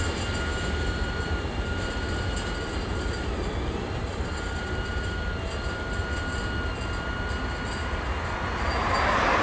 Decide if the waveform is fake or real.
real